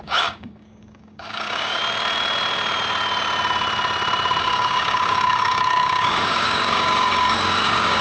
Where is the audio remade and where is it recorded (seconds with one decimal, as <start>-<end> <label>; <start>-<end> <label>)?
0.0-1.8 remade; 1.8-4.4 recorded; 4.4-8.0 remade